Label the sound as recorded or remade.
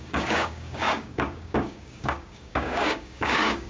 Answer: remade